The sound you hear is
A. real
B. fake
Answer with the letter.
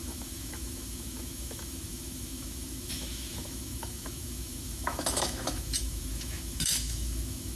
B